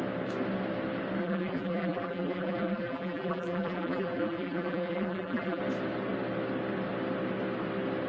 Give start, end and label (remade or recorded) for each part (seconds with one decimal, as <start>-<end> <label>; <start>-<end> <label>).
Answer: 0.0-1.2 recorded; 1.2-5.6 remade; 5.6-8.1 recorded